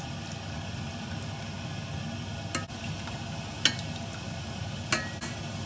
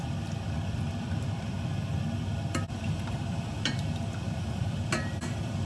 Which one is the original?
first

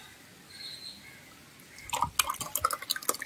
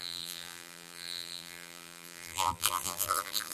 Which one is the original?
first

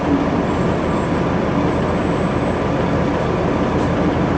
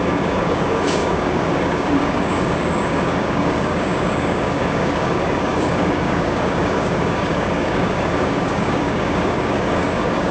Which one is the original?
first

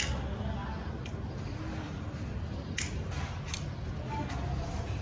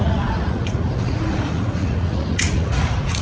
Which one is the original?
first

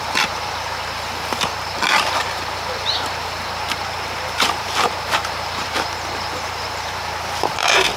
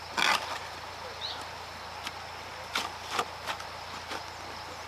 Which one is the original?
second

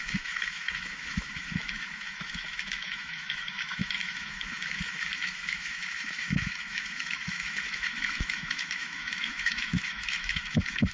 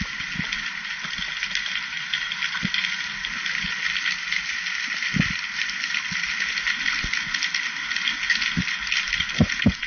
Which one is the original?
second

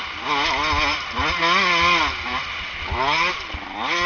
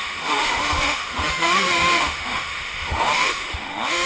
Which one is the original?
first